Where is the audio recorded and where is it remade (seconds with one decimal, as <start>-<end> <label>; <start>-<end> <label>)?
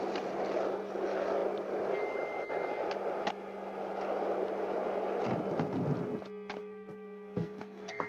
0.0-6.6 recorded; 6.6-8.1 remade